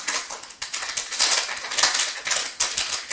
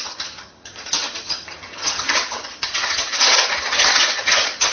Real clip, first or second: first